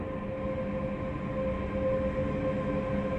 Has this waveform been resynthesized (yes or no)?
no